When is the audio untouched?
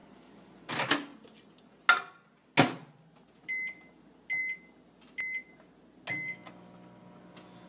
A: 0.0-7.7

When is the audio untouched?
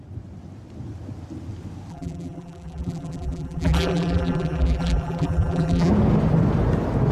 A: 0.0-1.9; 5.9-7.1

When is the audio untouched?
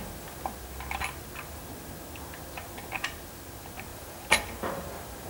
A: 0.0-3.9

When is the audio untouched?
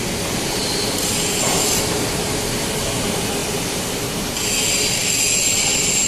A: 0.0-6.1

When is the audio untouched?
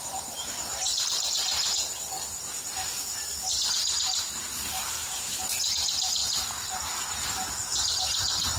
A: 1.5-3.6; 6.2-7.5